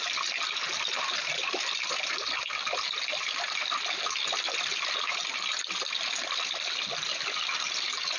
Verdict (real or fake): real